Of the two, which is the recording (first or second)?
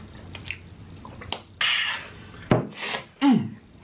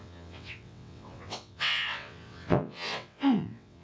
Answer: first